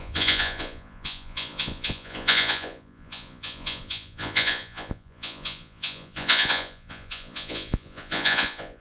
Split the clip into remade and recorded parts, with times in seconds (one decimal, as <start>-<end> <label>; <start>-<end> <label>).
0.0-8.8 remade